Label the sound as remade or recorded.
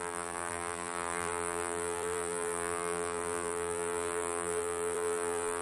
remade